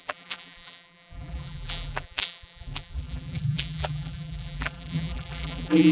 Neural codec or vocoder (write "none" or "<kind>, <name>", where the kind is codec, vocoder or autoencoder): vocoder, BigVGAN v2